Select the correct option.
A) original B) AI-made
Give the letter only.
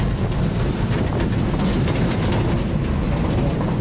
A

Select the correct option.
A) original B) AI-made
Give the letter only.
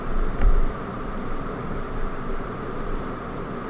B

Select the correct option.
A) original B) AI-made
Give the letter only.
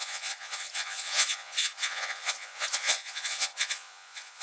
B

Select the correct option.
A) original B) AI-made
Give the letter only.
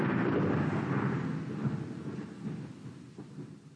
A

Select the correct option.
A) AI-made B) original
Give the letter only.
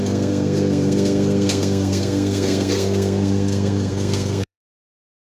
A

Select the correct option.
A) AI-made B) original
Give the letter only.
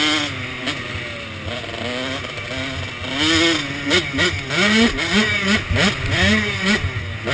B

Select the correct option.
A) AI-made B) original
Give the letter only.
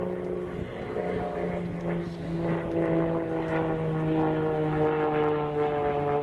B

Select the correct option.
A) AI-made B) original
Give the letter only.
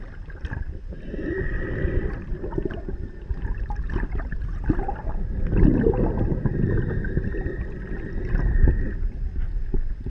B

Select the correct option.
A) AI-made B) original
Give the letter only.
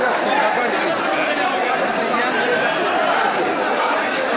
A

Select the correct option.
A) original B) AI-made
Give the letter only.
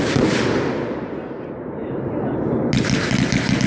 A